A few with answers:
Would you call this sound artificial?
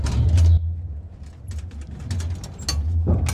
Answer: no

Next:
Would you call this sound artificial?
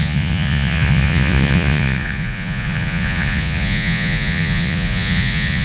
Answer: yes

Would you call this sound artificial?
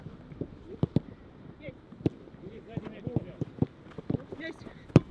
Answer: yes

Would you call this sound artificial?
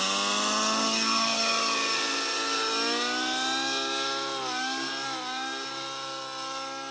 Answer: no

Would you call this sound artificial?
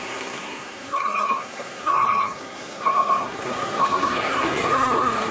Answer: yes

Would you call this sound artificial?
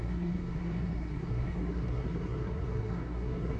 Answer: yes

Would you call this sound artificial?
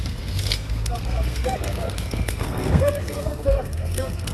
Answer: yes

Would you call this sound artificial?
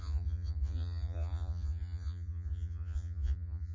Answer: yes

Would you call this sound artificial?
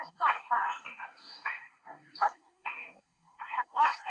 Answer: yes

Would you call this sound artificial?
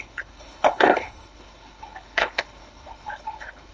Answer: yes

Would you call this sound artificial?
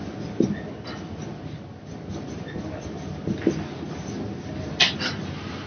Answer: no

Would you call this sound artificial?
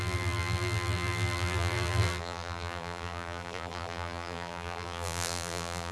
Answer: yes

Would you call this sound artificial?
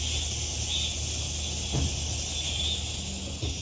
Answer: no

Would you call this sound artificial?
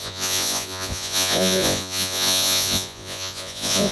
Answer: yes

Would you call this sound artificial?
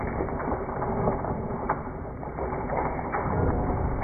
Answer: no